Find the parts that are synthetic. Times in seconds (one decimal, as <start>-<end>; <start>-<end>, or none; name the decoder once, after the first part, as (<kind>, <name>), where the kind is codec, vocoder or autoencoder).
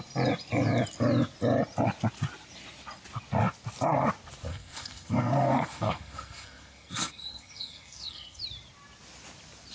4.5-8.4 (codec, SNAC)